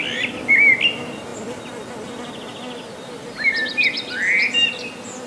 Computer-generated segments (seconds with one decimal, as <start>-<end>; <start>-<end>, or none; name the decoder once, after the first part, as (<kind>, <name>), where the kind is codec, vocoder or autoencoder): none